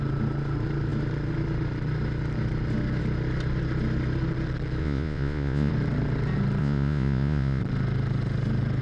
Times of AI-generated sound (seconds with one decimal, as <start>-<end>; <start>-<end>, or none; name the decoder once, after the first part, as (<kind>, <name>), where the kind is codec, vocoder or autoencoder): 4.8-5.7 (vocoder, Vocos); 6.6-7.6